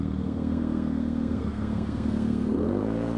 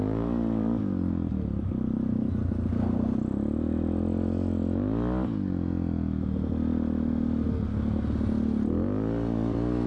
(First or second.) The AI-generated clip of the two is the first